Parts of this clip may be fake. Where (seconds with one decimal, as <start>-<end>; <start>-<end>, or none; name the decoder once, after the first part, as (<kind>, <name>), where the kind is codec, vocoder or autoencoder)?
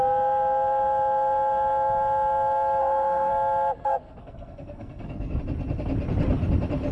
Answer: 2.8-3.3 (codec, SNAC); 3.8-5.4